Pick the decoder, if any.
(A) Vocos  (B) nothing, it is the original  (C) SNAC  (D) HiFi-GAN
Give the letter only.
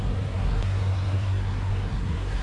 C